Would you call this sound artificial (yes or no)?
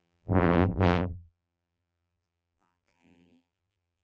yes